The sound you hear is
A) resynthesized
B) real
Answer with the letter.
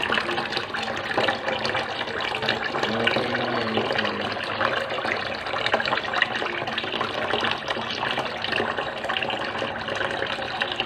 B